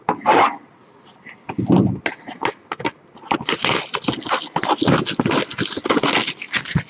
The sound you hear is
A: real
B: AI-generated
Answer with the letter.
A